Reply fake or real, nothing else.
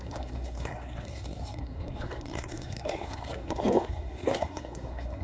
fake